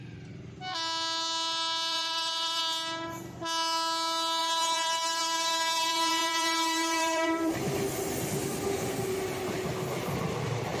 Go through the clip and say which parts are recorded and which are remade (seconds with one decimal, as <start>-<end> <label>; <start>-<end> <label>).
0.0-1.9 recorded; 1.9-2.6 remade; 2.6-4.4 recorded; 4.4-8.2 remade; 8.2-10.8 recorded